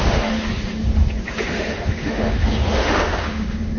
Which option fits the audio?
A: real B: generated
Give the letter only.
B